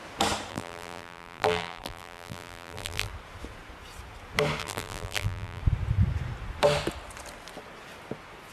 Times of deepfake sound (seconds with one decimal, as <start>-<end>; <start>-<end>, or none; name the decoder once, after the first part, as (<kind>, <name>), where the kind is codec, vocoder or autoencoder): 0.5-3.1 (vocoder, BigVGAN v2); 4.6-5.6